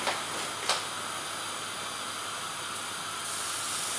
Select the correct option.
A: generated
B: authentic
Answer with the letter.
B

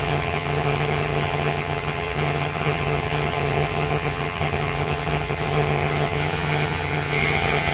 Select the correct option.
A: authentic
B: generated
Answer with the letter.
B